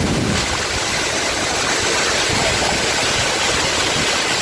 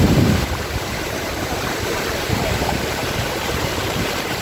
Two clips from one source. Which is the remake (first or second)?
second